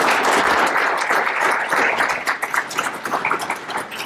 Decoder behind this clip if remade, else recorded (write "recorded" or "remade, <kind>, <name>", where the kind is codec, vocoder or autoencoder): recorded